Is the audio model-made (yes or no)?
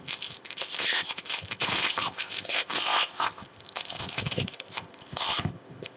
yes